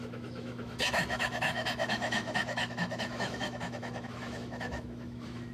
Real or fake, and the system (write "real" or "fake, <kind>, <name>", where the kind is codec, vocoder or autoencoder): fake, autoencoder, DAC-VAE